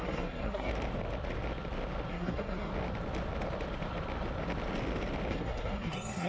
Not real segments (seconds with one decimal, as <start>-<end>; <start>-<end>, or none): 0.0-0.7; 2.1-2.7; 5.3-6.3